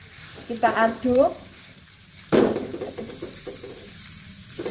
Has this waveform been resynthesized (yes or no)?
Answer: yes